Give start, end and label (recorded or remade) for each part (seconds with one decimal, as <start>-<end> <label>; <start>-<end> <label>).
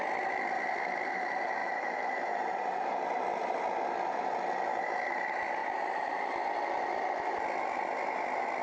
0.0-1.6 recorded; 1.6-3.1 remade; 3.1-5.6 recorded; 5.6-6.3 remade; 6.3-8.6 recorded